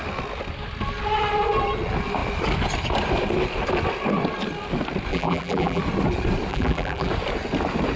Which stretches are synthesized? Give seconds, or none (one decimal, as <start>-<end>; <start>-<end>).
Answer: 5.1-5.8; 6.5-7.1